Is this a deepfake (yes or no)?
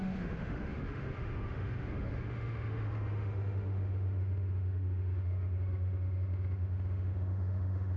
yes